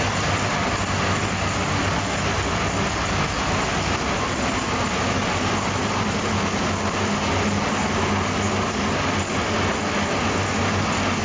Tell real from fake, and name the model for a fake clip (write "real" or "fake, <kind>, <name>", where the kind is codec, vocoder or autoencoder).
real